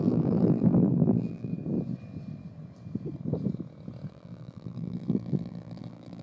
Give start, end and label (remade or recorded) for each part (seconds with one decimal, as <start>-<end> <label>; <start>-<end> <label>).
0.0-1.5 remade; 1.5-4.1 recorded; 4.1-6.2 remade